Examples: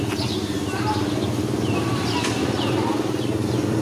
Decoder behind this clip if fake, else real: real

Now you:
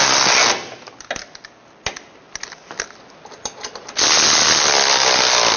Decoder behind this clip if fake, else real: real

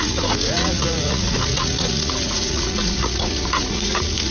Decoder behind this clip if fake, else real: fake, vocoder, Vocos